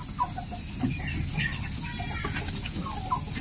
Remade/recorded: recorded